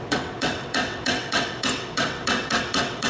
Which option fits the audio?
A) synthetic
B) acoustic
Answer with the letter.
A